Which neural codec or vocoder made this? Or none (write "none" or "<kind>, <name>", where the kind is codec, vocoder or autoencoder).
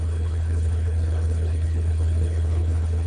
codec, HILCodec